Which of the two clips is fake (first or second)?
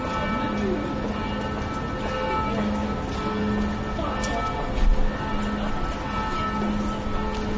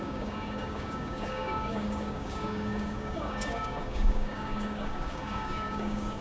second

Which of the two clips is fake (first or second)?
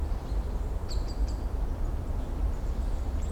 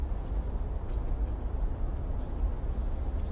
first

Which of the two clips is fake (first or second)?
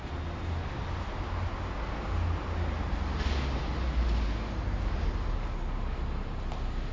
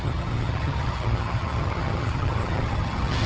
second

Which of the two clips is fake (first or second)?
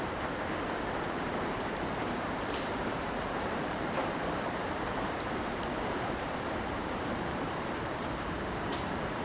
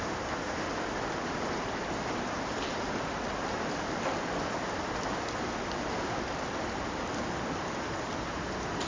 first